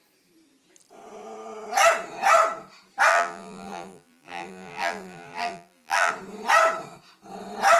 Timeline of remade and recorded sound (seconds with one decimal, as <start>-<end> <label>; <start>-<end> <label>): 0.0-3.1 recorded; 3.1-6.1 remade; 6.1-7.8 recorded